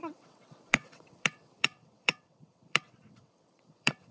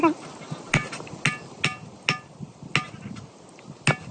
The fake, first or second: first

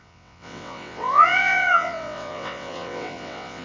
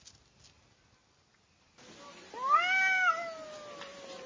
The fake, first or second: first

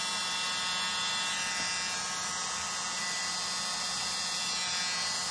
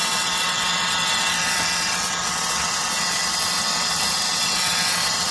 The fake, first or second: second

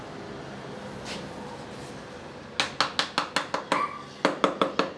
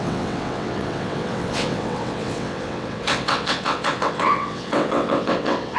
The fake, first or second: second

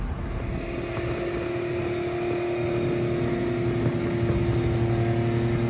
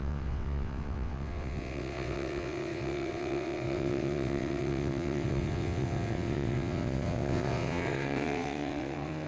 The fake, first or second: second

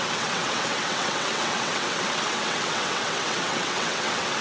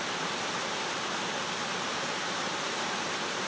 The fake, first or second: first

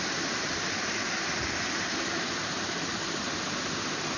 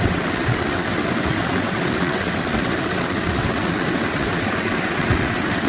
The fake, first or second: second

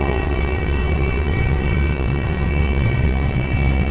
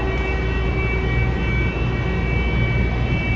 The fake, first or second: first